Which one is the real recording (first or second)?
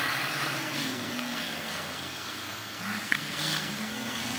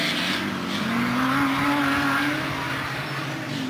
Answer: second